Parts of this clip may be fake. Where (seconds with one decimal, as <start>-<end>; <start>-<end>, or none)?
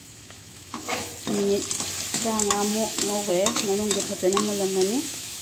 0.0-1.1; 2.1-5.4